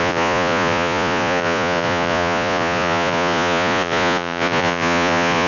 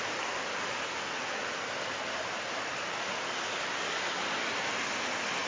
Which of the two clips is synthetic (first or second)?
first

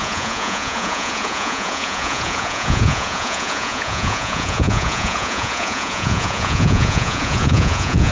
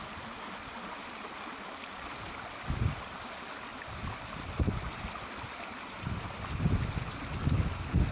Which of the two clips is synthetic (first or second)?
first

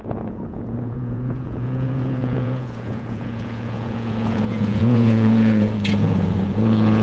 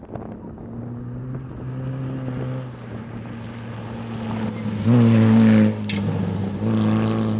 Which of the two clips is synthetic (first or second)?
first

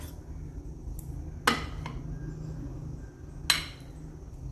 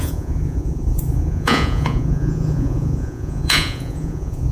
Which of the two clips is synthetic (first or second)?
second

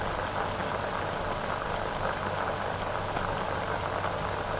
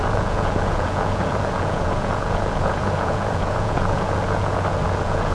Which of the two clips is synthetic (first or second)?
second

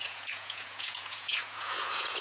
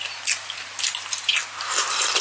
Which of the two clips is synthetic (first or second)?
first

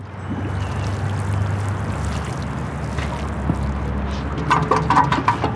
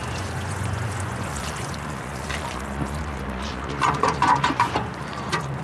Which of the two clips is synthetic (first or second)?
second